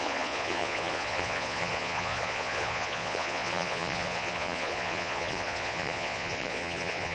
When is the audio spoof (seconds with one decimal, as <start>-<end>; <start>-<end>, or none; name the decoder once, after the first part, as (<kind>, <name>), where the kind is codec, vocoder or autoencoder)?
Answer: 0.0-7.1 (vocoder, Vocos)